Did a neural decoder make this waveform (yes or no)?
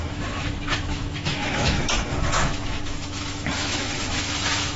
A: yes